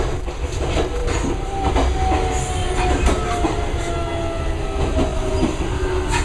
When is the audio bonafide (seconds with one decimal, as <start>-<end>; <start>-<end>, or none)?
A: 0.0-1.0; 1.7-2.6; 3.9-5.1; 5.6-6.2